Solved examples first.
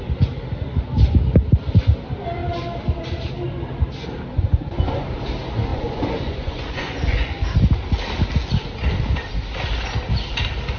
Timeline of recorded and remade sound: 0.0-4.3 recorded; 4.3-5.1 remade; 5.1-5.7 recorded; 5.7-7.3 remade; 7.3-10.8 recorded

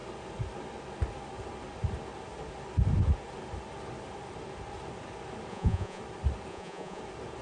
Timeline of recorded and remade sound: 0.0-5.5 recorded; 5.5-6.0 remade; 6.0-6.5 recorded; 6.5-7.0 remade; 7.0-7.4 recorded

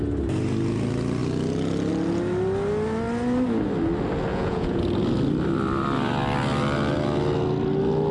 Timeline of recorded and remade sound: 0.0-4.3 recorded; 4.3-4.8 remade; 4.8-8.1 recorded

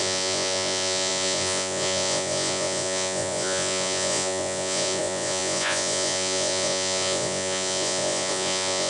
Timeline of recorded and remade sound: 0.0-8.9 remade

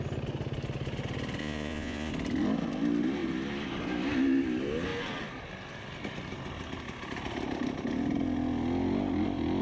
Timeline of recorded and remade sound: 0.0-1.4 recorded; 1.4-2.1 remade; 2.1-9.6 recorded